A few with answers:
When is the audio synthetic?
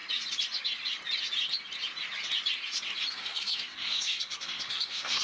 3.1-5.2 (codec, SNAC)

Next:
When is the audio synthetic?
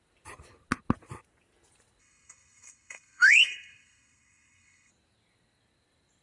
2.0-4.9 (codec, SNAC)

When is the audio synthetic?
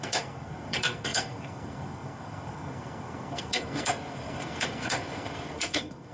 0.0-6.1 (codec, SNAC)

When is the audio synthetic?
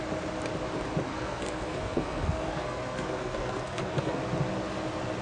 1.1-4.2 (codec, SNAC)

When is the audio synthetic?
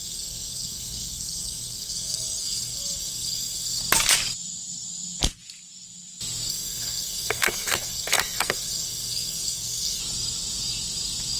0.0-3.8 (codec, SNAC); 6.5-10.0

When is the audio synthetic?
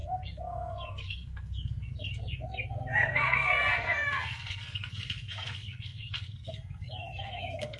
0.0-7.8 (codec, SNAC)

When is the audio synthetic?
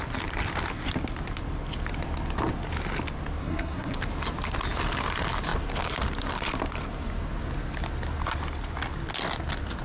3.4-4.0 (codec, SNAC)